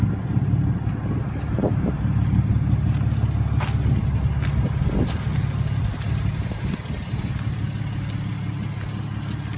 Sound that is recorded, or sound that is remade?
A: recorded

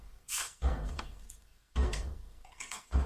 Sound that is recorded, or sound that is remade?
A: remade